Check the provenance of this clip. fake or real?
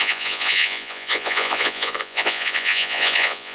fake